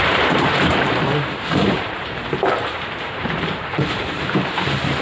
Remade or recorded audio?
remade